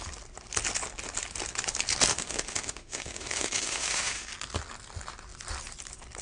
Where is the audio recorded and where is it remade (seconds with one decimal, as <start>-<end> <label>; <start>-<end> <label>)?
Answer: 0.0-2.1 recorded; 2.1-4.3 remade; 4.3-6.2 recorded